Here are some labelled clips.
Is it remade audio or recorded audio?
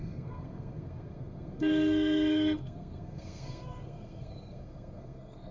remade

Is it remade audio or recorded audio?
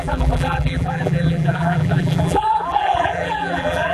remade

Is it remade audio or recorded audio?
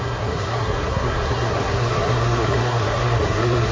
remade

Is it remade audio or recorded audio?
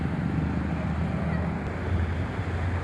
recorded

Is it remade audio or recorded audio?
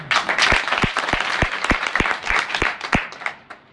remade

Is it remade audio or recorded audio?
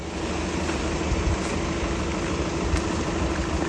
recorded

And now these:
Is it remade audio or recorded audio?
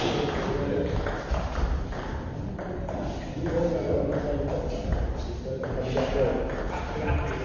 recorded